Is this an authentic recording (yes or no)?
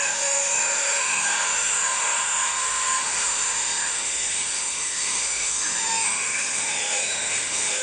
no